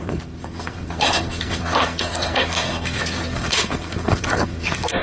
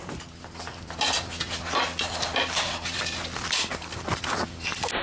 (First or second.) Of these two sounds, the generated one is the first